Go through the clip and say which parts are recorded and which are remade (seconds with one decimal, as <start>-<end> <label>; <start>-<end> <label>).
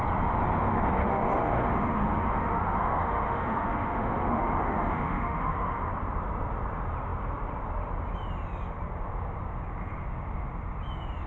0.0-1.0 recorded; 1.0-5.9 remade; 5.9-11.3 recorded